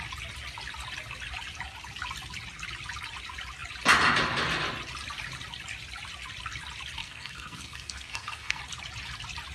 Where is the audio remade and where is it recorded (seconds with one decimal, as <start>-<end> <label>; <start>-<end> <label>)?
0.0-7.0 recorded; 7.0-8.6 remade; 8.6-9.5 recorded